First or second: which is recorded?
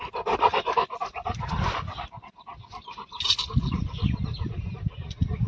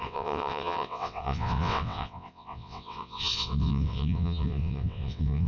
first